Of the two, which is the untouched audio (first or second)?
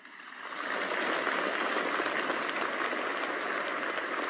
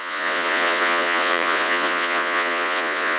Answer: first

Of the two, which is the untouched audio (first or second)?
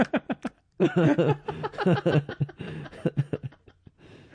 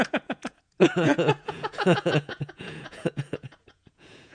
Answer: first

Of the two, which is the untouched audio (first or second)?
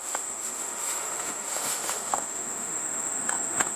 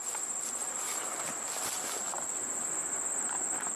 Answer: second